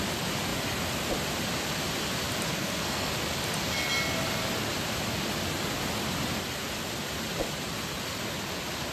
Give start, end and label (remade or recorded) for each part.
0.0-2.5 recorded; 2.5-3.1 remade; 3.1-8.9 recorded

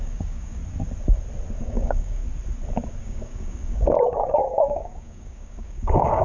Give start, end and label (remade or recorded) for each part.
0.0-0.6 remade; 0.6-1.6 recorded; 1.6-2.2 remade; 2.2-3.0 recorded; 3.0-6.2 remade

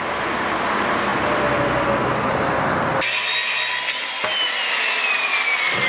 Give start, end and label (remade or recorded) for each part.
0.0-5.9 recorded

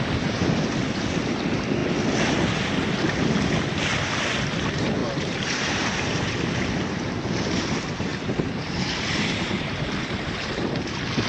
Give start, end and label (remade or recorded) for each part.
0.0-5.0 recorded; 5.0-6.2 remade; 6.2-8.1 recorded; 8.1-10.8 remade; 10.8-11.3 recorded

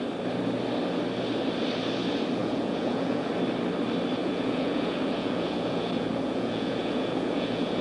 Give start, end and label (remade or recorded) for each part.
0.0-2.4 recorded; 2.4-3.3 remade; 3.3-4.2 recorded; 4.2-7.8 remade